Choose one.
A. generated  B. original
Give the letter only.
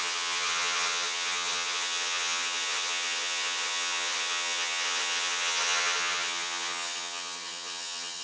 A